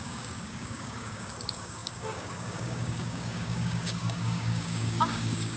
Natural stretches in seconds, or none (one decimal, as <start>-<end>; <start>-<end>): none